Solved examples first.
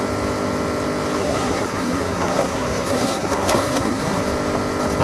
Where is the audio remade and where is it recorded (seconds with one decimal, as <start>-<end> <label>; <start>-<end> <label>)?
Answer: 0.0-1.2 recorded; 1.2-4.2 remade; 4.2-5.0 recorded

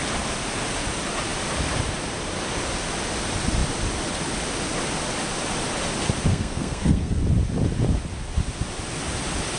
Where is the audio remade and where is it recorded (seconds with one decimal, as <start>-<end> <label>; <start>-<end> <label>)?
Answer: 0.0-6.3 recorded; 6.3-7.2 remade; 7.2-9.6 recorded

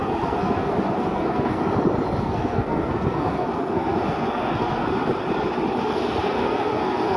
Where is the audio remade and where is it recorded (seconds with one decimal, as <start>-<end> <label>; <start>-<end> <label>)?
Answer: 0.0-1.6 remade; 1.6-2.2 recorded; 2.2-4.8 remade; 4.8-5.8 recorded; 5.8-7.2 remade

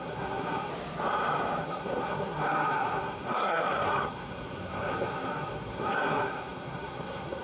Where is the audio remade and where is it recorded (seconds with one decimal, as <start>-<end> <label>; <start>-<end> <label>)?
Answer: 0.0-0.7 remade; 0.7-1.6 recorded; 1.6-7.4 remade

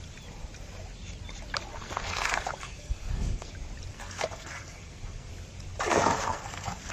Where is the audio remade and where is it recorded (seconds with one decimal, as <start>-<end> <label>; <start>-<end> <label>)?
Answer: 0.0-1.7 recorded; 1.7-3.5 remade; 3.5-3.9 recorded; 3.9-5.3 remade; 5.3-5.9 recorded; 5.9-6.9 remade

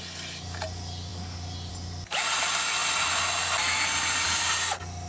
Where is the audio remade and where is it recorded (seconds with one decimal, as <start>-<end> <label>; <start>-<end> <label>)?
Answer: 0.0-5.1 recorded